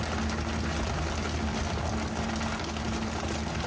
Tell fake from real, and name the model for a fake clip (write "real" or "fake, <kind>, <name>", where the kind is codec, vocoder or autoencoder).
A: real